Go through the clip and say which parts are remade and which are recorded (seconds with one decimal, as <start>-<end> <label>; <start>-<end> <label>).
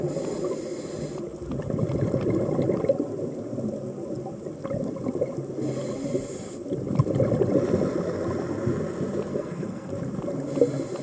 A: 0.0-9.3 recorded; 9.3-9.9 remade; 9.9-11.0 recorded